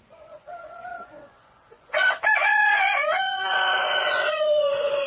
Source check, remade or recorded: remade